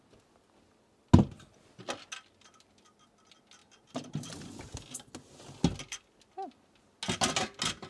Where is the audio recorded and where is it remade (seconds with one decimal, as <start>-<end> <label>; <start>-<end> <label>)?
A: 0.0-7.9 recorded